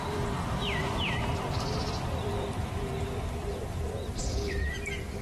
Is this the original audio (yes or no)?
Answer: no